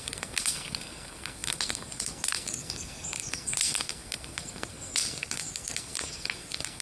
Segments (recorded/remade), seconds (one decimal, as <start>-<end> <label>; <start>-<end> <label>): 0.0-6.8 remade